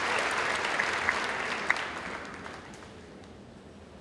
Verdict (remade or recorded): recorded